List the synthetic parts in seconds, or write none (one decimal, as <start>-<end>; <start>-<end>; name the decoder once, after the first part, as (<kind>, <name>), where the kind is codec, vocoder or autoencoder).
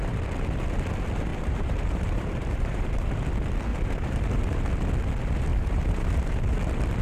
1.3-3.2 (vocoder, BigVGAN v2); 3.7-4.6; 5.5-6.4